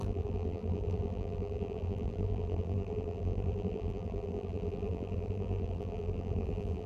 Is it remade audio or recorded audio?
remade